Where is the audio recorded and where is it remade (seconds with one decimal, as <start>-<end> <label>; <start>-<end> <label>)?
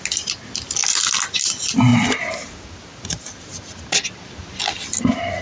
0.0-1.9 recorded; 1.9-3.9 remade; 3.9-5.4 recorded